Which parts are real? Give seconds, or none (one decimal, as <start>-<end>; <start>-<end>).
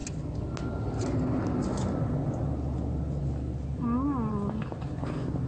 0.0-5.5